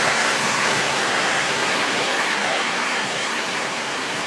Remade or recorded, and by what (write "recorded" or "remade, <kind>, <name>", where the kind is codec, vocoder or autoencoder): remade, codec, SNAC